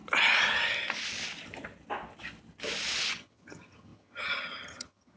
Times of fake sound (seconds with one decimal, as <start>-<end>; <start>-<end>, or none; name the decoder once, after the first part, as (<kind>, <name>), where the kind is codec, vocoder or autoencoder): 3.1-5.2 (vocoder, HiFi-GAN)